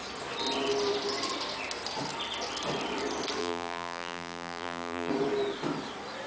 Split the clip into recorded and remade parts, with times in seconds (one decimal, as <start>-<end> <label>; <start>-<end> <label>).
0.0-3.4 recorded; 3.4-5.1 remade; 5.1-6.3 recorded